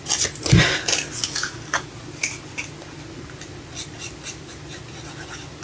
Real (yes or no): yes